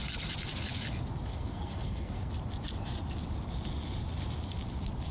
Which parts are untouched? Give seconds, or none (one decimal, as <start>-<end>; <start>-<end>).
0.0-1.3; 2.3-5.1